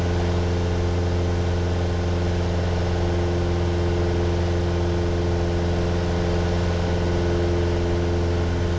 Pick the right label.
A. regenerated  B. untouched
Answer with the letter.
B